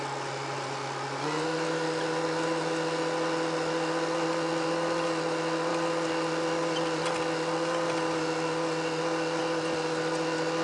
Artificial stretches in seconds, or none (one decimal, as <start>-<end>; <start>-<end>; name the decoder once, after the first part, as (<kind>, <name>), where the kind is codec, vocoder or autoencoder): none